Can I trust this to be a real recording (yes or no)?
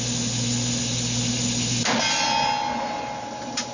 yes